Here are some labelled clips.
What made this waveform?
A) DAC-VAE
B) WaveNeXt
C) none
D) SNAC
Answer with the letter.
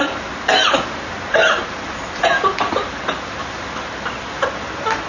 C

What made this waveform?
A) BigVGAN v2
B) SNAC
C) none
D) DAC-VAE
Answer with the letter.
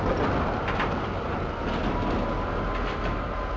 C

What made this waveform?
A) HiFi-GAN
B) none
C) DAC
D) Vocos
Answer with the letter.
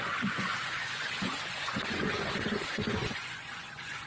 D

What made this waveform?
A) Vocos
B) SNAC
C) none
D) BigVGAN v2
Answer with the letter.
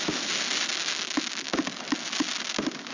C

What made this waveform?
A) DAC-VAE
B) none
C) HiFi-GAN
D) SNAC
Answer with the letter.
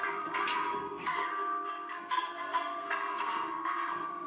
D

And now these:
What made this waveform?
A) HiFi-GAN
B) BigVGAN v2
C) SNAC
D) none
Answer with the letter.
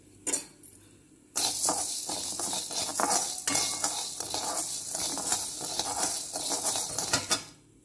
D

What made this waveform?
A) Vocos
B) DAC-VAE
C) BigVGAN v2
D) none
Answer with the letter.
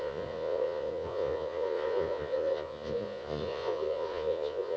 A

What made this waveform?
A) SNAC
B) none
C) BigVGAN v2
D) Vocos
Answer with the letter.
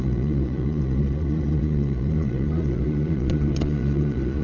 D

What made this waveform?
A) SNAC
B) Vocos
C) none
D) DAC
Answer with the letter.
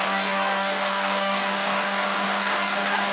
D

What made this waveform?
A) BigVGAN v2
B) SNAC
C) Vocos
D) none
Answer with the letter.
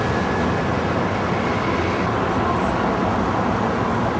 D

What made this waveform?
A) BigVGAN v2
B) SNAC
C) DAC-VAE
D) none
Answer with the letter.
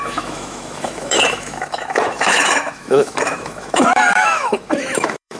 C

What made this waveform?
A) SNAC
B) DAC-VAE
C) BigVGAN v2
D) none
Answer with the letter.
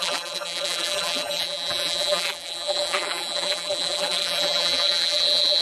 C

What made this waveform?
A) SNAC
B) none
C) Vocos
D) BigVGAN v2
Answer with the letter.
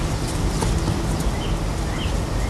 B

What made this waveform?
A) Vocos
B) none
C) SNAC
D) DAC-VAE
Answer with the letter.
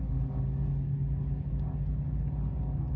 B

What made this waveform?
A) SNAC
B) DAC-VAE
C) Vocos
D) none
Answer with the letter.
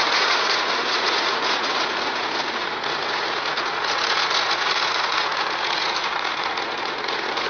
C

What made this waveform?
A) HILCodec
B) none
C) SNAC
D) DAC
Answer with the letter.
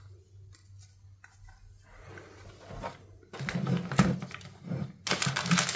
B